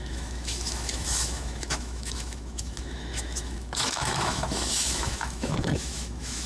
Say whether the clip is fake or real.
fake